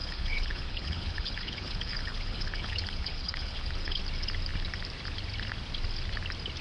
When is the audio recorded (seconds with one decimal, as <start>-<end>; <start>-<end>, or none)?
4.0-6.6